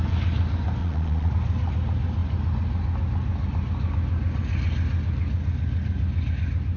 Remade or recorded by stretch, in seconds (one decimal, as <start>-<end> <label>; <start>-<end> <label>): 0.0-0.8 recorded; 0.8-1.3 remade; 1.3-6.8 recorded